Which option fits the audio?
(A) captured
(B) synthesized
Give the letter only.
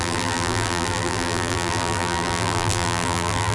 B